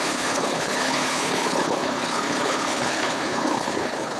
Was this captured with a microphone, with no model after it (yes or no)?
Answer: no